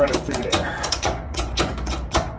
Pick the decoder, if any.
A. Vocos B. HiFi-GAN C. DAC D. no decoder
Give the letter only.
A